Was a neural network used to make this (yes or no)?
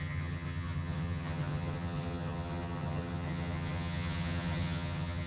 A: yes